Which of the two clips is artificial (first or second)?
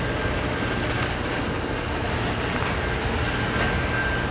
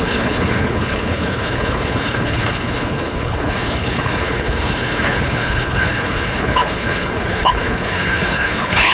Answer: second